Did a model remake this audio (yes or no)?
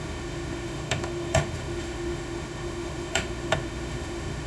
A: yes